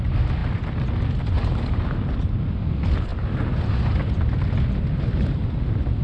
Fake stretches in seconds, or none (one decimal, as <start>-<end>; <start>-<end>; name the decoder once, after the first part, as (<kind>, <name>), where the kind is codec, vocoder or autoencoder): none